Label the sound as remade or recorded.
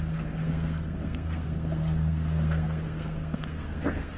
remade